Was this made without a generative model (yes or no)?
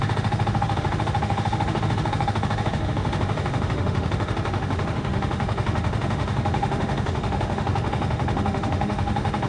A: no